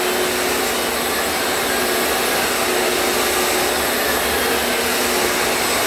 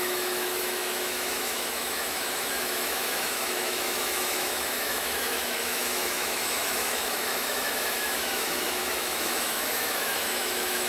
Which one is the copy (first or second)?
second